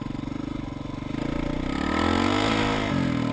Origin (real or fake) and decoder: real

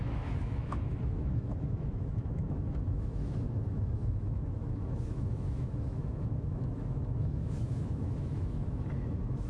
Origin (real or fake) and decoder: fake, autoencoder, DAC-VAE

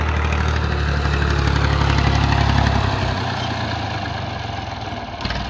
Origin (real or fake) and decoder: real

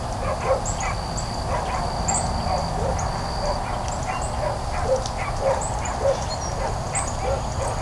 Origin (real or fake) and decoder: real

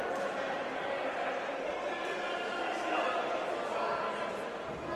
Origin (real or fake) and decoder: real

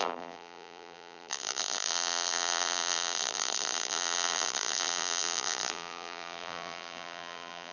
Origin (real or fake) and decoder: fake, vocoder, BigVGAN v2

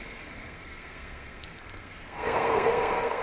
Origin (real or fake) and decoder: fake, codec, SNAC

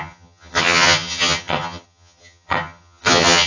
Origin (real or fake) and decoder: fake, vocoder, HiFi-GAN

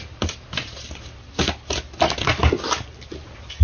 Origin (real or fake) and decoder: real